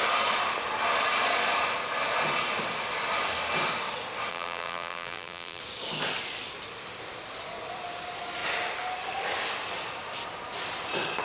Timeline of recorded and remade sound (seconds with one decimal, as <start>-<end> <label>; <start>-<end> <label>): 0.0-4.3 recorded; 4.3-5.6 remade; 5.6-11.2 recorded